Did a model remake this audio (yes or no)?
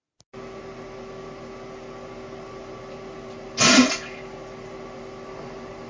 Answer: no